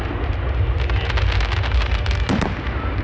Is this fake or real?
real